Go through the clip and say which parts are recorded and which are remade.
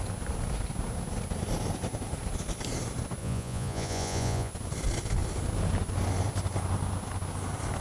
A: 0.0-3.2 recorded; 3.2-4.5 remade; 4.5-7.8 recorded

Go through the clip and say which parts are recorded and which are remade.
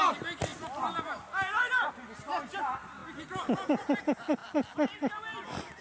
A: 0.0-5.8 recorded